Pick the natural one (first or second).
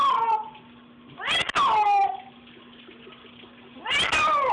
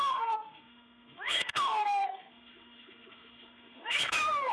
first